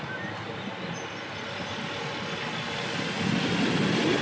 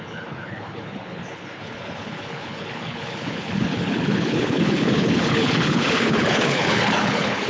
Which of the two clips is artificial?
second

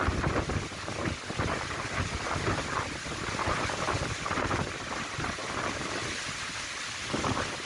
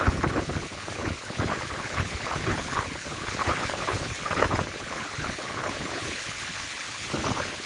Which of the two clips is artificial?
second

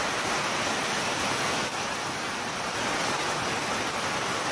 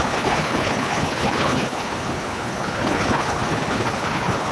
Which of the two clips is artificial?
second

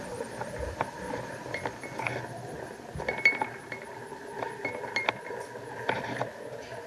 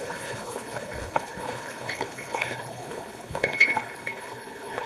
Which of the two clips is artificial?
second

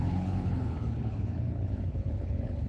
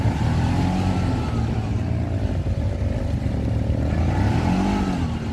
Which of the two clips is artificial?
first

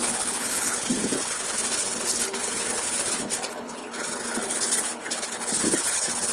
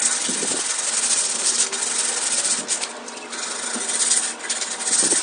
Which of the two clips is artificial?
first